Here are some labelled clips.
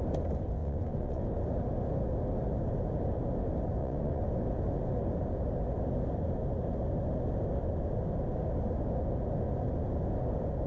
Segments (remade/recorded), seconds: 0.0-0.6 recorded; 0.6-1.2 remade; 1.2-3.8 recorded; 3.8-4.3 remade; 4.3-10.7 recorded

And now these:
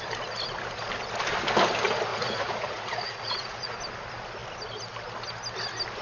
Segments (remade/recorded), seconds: 0.0-2.1 recorded; 2.1-3.8 remade; 3.8-6.0 recorded

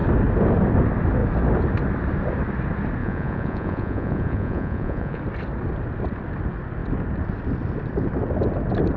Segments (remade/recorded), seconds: 0.0-3.0 recorded; 3.0-5.2 remade; 5.2-9.0 recorded

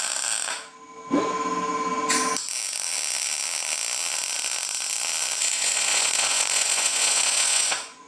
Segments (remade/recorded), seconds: 0.0-5.4 recorded; 5.4-8.1 remade

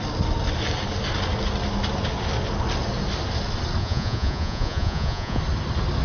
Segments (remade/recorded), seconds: 0.0-3.8 recorded; 3.8-5.4 remade; 5.4-6.0 recorded

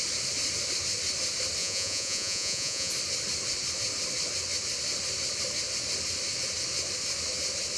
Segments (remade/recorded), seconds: 0.0-1.6 recorded; 1.6-2.9 remade; 2.9-7.8 recorded

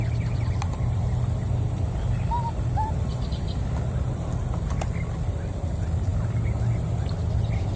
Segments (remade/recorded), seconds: 0.0-7.8 recorded

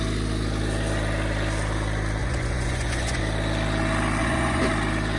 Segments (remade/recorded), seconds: 0.0-2.2 recorded; 2.2-3.2 remade; 3.2-4.2 recorded; 4.2-4.7 remade; 4.7-5.2 recorded